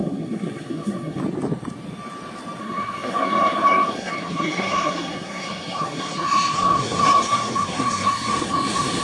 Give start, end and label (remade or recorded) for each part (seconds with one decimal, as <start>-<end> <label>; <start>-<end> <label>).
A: 0.0-1.2 remade; 1.2-2.6 recorded; 2.6-9.0 remade

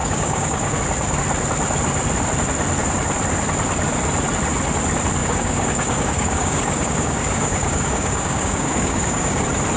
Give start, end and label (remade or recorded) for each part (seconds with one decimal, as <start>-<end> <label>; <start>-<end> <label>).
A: 0.0-0.8 remade; 0.8-5.2 recorded; 5.2-9.4 remade; 9.4-9.8 recorded

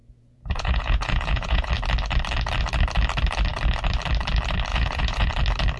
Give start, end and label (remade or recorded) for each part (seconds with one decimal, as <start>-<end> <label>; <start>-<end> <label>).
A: 0.0-1.7 remade; 1.7-4.7 recorded; 4.7-5.3 remade; 5.3-5.8 recorded